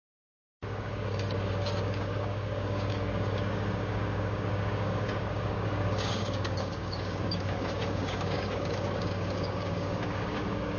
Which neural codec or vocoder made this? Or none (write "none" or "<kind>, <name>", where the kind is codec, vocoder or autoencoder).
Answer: codec, DAC